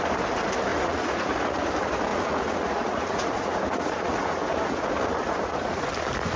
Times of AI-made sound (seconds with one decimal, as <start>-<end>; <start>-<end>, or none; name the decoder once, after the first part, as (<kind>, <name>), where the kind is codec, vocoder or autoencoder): 0.7-1.7 (vocoder, Vocos); 2.1-5.9